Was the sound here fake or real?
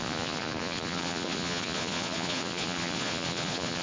fake